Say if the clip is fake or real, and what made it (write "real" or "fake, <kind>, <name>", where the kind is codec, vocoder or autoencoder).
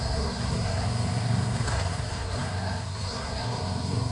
fake, codec, SNAC